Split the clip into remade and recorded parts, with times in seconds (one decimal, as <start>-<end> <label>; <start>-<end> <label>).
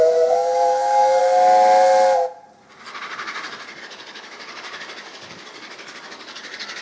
0.0-1.2 remade; 1.2-3.8 recorded; 3.8-6.8 remade